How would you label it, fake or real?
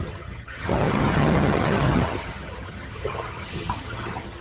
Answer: fake